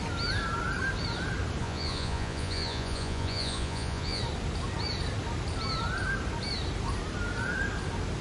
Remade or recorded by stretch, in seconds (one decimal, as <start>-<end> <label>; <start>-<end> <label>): 0.0-1.6 recorded; 1.6-4.2 remade; 4.2-8.2 recorded